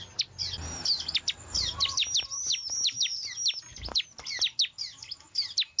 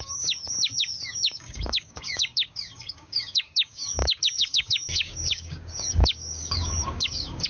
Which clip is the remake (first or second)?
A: second